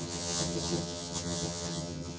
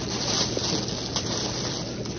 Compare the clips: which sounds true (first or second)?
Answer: second